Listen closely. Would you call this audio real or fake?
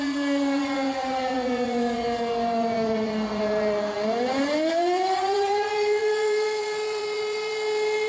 fake